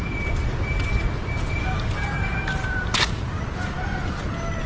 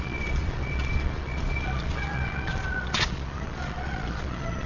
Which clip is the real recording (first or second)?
first